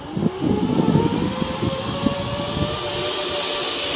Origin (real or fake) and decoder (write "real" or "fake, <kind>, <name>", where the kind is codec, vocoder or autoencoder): real